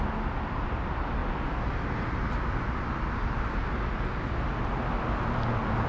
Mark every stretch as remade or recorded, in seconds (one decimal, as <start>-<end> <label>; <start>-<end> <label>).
0.0-5.9 recorded